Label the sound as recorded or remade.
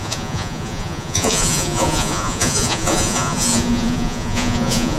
remade